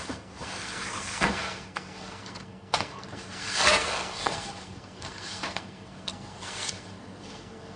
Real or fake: fake